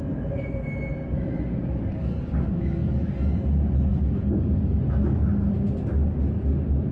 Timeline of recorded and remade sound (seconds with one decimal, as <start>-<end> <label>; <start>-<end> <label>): 0.0-1.8 recorded; 1.8-3.1 remade; 3.1-3.9 recorded; 3.9-4.8 remade; 4.8-6.9 recorded